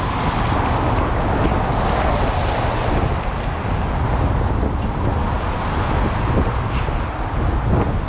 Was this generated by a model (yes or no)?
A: no